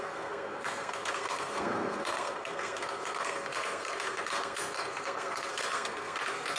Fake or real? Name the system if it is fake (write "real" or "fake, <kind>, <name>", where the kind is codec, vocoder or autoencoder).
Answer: fake, codec, SNAC